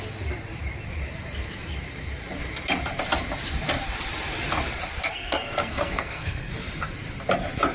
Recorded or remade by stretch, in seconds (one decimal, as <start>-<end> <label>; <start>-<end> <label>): 0.0-5.1 recorded; 5.1-6.5 remade; 6.5-7.7 recorded